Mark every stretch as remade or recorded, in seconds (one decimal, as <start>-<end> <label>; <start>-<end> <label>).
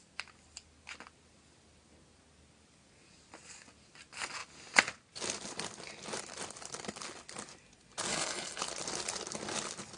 0.0-8.1 recorded; 8.1-8.6 remade; 8.6-10.0 recorded